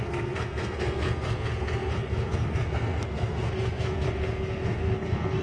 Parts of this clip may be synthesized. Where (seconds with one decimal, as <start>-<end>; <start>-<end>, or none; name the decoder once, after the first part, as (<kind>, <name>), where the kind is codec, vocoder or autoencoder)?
0.0-5.4 (codec, SNAC)